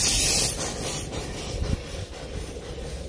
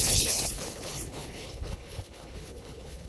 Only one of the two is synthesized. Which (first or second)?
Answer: second